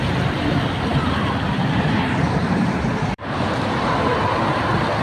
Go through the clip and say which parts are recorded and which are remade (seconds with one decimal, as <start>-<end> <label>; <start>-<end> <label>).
0.0-0.9 recorded; 0.9-3.9 remade; 3.9-5.0 recorded